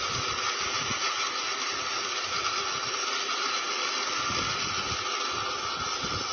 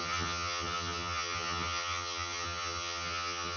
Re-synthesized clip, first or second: second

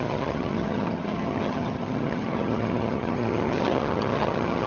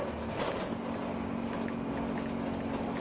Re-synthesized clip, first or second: first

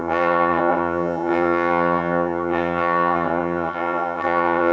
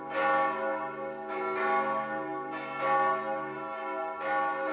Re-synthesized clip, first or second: first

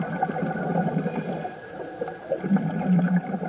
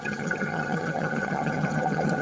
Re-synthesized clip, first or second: second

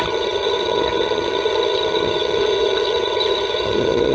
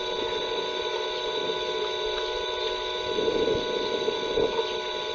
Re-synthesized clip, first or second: first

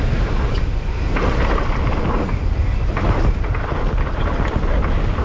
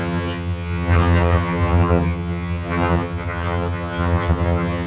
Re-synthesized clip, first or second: second